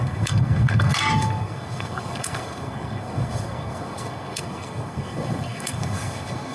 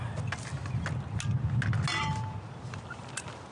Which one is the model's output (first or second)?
first